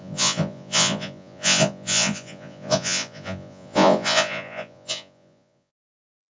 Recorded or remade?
remade